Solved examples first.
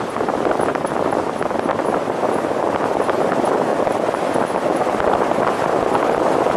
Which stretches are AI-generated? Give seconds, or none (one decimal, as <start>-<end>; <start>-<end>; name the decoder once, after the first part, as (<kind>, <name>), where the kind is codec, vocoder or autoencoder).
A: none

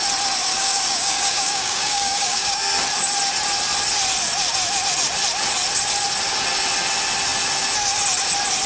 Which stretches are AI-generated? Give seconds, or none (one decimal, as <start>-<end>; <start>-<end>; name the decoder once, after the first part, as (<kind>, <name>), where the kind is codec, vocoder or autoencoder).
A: 0.5-2.6 (codec, DAC)

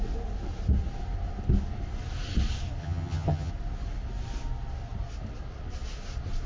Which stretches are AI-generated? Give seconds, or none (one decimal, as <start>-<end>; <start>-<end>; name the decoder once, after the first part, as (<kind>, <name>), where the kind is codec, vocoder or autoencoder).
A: 2.8-3.5 (vocoder, HiFi-GAN)

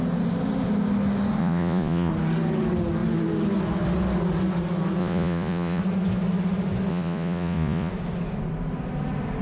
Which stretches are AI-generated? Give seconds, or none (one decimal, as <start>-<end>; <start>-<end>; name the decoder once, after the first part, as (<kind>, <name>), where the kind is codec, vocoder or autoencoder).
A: 1.4-2.1 (vocoder, Vocos); 5.0-5.8; 6.9-7.9